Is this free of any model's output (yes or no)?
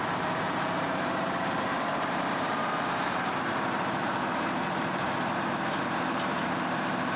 no